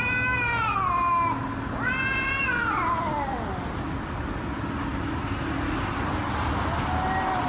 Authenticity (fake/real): real